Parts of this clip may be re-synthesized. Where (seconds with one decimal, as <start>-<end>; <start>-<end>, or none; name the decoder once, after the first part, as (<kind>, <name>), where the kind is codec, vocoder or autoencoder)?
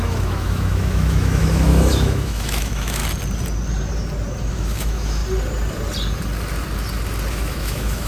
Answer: 0.0-3.0 (autoencoder, DAC-VAE); 4.5-5.2; 7.3-8.1